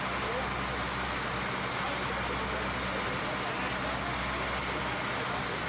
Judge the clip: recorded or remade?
recorded